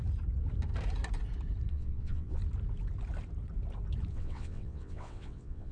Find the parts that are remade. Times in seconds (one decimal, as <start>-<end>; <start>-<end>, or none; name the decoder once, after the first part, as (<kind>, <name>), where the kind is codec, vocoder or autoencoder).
1.7-2.4 (vocoder, WaveNeXt); 4.1-5.7